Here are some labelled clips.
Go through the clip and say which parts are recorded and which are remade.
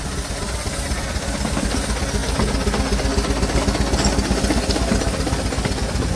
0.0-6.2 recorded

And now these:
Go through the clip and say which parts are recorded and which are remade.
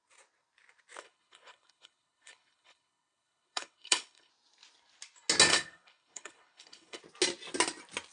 0.0-1.0 recorded; 1.0-4.3 remade; 4.3-5.5 recorded; 5.5-7.0 remade; 7.0-8.1 recorded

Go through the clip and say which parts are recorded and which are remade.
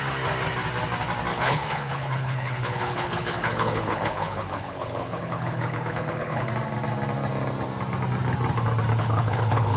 0.0-1.3 recorded; 1.3-6.5 remade; 6.5-8.9 recorded; 8.9-9.8 remade